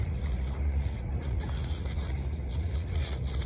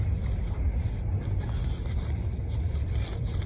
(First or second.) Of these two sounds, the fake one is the first